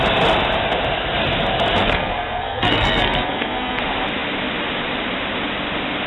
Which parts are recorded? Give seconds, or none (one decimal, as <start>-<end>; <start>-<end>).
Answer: 0.0-1.8; 3.8-6.1